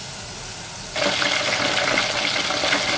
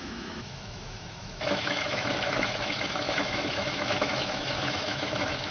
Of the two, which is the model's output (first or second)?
second